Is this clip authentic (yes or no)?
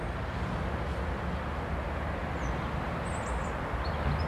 yes